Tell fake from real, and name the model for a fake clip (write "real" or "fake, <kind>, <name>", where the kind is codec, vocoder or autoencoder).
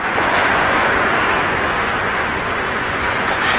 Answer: fake, vocoder, Vocos